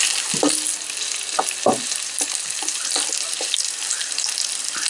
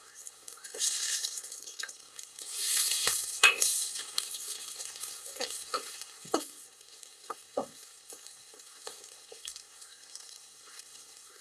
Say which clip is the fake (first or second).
second